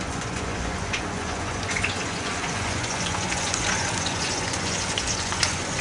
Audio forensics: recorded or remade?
remade